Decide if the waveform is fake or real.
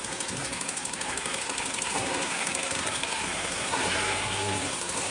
fake